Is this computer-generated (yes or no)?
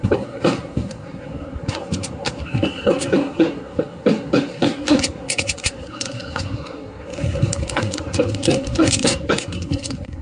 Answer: yes